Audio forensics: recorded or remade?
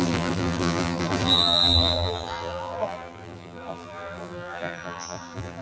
remade